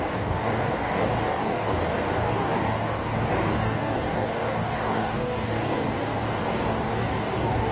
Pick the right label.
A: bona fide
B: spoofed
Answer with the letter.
B